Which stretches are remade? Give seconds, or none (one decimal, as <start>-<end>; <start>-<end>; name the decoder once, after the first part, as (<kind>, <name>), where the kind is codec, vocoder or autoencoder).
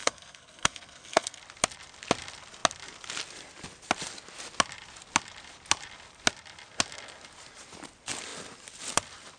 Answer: 0.0-1.4 (codec, SNAC)